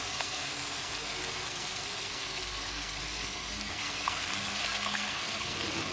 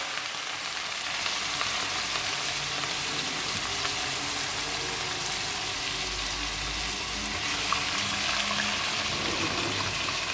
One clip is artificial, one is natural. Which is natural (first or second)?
second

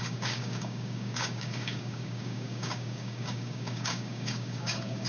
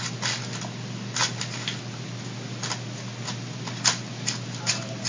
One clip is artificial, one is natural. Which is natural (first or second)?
second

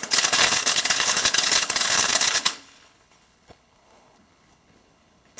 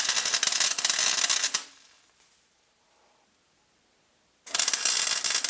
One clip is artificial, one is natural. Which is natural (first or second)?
second